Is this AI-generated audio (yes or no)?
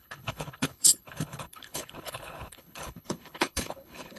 yes